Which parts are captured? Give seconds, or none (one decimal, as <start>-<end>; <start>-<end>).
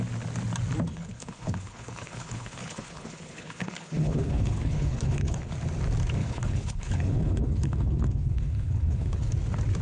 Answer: 0.0-0.9; 5.5-6.2; 9.3-9.8